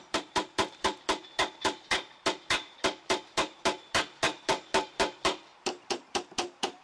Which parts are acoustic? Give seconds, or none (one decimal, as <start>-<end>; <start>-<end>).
none